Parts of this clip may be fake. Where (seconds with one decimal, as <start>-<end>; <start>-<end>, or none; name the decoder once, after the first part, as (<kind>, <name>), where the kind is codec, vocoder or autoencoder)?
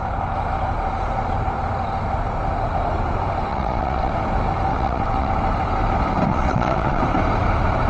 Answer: 3.5-4.1 (vocoder, WaveNeXt); 4.7-5.3; 6.3-7.0